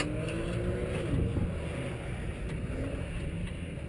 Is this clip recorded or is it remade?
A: recorded